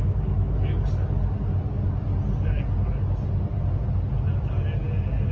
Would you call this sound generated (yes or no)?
no